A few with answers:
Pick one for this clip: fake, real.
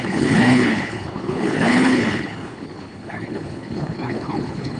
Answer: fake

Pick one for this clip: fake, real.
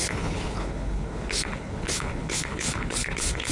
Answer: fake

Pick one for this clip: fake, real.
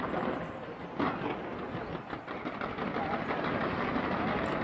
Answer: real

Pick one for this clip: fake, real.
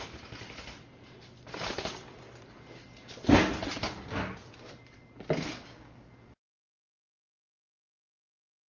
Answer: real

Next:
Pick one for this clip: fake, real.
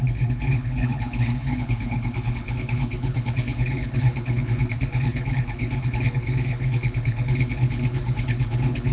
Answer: fake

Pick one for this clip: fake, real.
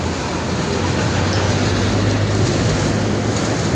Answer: real